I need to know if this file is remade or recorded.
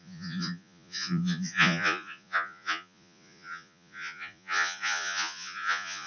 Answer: remade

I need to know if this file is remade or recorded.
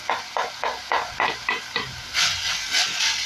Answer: recorded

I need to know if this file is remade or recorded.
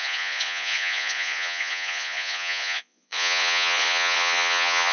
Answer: remade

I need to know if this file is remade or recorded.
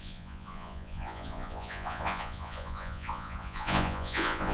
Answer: remade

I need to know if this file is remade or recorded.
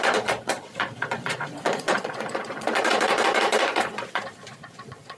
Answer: remade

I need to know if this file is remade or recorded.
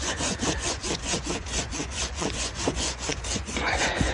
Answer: remade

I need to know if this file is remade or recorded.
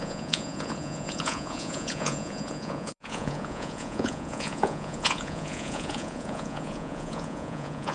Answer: remade